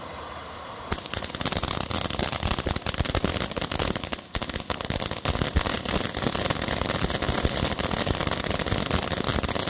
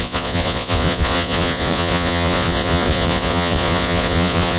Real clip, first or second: first